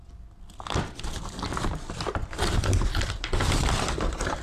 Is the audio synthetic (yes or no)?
no